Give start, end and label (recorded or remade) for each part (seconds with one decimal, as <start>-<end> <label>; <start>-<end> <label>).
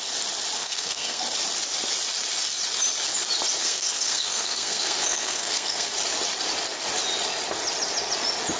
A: 0.0-0.6 recorded; 0.6-1.2 remade; 1.2-3.6 recorded; 3.6-5.9 remade; 5.9-8.6 recorded